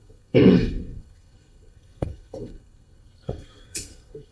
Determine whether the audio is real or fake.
fake